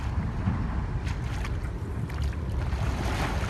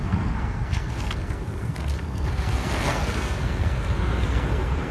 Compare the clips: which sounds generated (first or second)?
second